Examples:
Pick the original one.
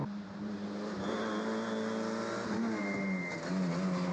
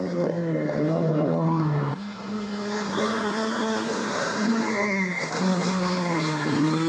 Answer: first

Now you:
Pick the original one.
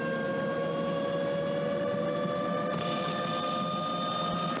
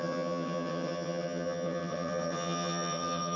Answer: first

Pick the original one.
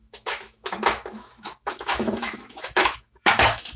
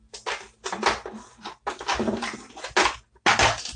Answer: second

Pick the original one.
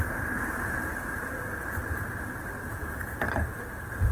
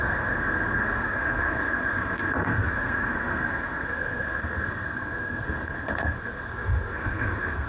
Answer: first